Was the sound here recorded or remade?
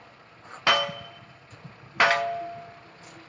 recorded